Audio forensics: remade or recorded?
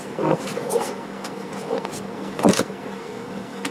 remade